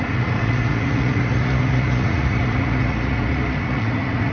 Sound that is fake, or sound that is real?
fake